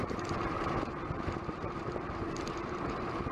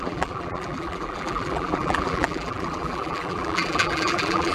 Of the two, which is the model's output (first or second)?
second